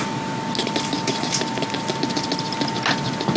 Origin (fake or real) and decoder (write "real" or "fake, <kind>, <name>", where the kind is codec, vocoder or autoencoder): real